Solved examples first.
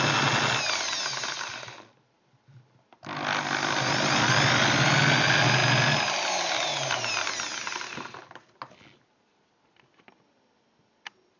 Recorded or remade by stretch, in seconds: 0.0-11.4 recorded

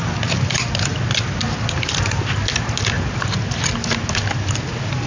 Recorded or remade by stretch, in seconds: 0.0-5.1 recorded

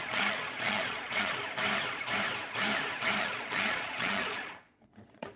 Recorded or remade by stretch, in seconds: 0.0-1.4 remade; 1.4-3.2 recorded; 3.2-5.4 remade

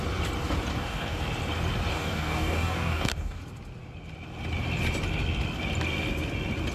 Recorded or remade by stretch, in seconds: 0.0-0.7 recorded; 0.7-1.2 remade; 1.2-1.9 recorded; 1.9-3.4 remade; 3.4-6.7 recorded

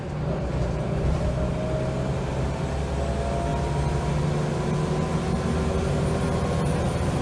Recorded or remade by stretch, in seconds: 0.0-7.2 recorded

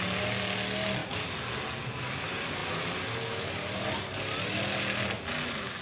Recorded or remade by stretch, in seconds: 0.0-5.8 recorded